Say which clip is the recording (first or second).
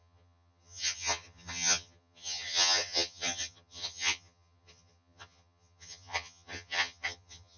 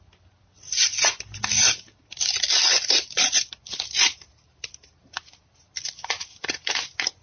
second